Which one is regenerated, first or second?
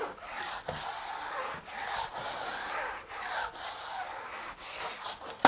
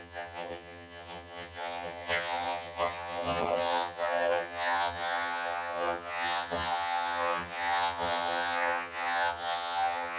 second